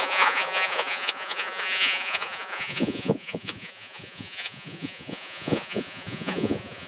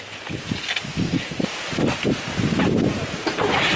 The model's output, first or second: first